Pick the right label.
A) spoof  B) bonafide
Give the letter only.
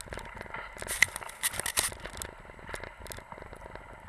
B